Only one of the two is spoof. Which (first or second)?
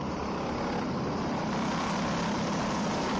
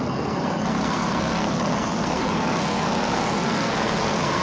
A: second